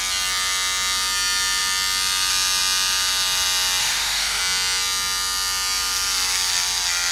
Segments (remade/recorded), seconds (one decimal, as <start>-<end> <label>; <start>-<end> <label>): 0.0-3.8 recorded; 3.8-4.4 remade; 4.4-7.1 recorded